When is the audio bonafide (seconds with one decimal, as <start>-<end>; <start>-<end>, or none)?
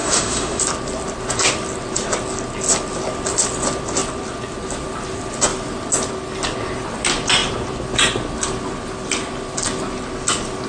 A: 0.6-10.7